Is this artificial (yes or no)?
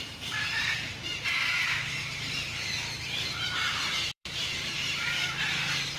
yes